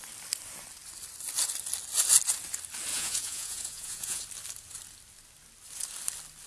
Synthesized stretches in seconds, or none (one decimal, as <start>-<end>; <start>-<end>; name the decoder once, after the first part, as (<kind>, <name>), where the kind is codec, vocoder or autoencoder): 2.9-4.2 (vocoder, Vocos)